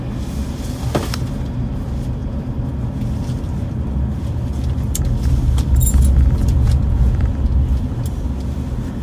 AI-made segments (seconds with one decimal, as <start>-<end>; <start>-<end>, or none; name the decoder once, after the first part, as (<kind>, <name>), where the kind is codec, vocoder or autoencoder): 6.4-7.3 (vocoder, Vocos)